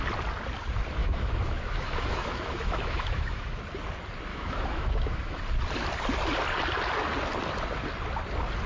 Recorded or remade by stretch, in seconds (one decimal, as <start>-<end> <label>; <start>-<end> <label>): 0.0-1.0 recorded; 1.0-3.6 remade; 3.6-4.3 recorded; 4.3-5.4 remade; 5.4-8.7 recorded

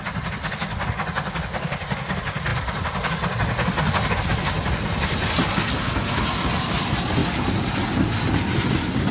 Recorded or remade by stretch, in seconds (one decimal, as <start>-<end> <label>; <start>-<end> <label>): 0.0-9.1 recorded